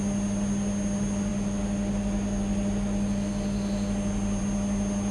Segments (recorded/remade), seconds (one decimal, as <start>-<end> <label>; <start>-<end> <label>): 0.0-5.1 recorded